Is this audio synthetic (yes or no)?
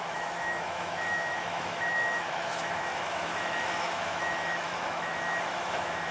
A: yes